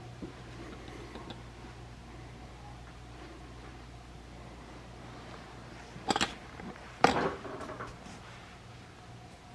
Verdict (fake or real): real